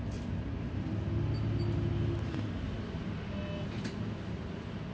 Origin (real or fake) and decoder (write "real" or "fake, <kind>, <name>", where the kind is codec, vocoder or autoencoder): real